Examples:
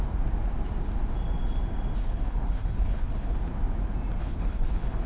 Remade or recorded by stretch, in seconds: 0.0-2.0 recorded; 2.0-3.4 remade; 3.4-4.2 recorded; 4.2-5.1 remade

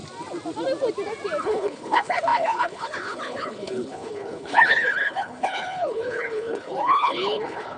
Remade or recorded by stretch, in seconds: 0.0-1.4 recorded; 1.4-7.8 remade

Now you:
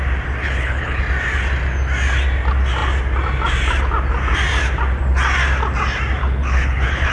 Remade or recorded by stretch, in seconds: 0.0-0.4 recorded; 0.4-1.0 remade; 1.0-6.2 recorded; 6.2-7.1 remade

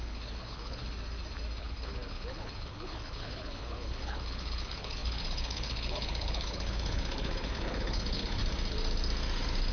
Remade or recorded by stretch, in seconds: 0.0-0.8 remade; 0.8-1.6 recorded; 1.6-8.4 remade; 8.4-9.7 recorded

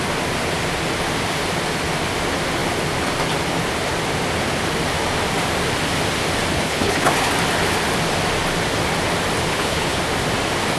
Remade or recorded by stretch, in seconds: 0.0-6.5 recorded; 6.5-7.1 remade; 7.1-9.5 recorded; 9.5-10.0 remade; 10.0-10.8 recorded

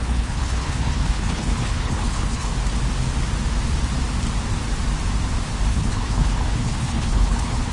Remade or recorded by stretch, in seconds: 0.0-2.5 remade; 2.5-5.7 recorded; 5.7-7.7 remade

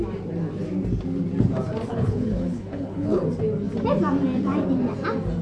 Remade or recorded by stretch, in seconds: 0.0-1.9 recorded; 1.9-3.2 remade; 3.2-5.4 recorded